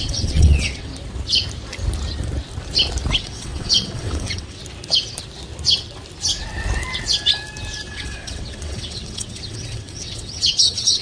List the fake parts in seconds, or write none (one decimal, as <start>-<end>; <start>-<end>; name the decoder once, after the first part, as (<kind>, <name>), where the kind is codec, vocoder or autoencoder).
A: 0.0-0.9 (vocoder, WaveNeXt); 3.2-4.6; 7.9-11.0